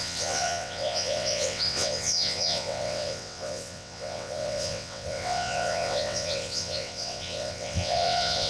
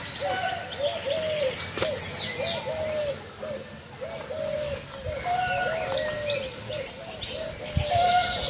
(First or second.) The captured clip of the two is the second